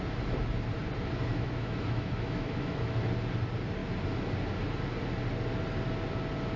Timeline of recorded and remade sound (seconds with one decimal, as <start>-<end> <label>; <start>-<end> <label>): 0.0-1.3 recorded; 1.3-3.0 remade; 3.0-6.6 recorded